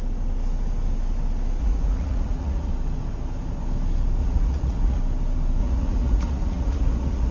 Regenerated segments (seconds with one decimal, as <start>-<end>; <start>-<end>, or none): 1.6-2.7; 4.2-5.0; 5.6-7.3